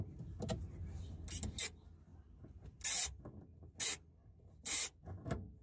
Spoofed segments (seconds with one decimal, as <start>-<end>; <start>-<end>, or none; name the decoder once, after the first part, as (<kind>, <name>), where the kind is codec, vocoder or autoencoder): none